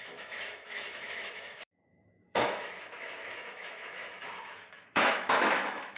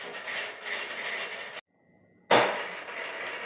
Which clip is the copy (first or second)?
first